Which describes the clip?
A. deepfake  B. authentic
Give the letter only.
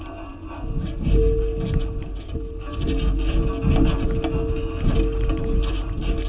B